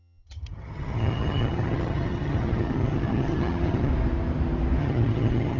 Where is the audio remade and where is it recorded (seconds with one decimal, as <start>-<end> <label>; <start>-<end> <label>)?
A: 0.0-3.9 remade; 3.9-4.8 recorded; 4.8-5.6 remade